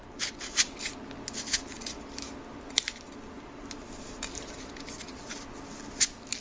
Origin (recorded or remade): recorded